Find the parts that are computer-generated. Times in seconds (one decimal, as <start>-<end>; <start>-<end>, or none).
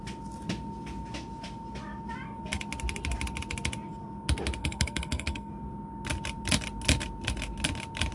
4.6-5.5